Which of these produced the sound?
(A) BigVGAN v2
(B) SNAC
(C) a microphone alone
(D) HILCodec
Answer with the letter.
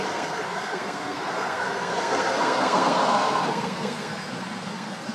B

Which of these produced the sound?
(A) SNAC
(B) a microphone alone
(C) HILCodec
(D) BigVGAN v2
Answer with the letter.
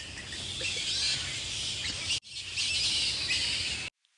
B